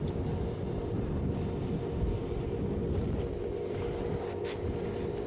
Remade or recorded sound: recorded